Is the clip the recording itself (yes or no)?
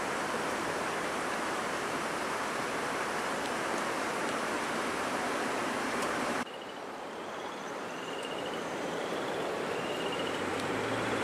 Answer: no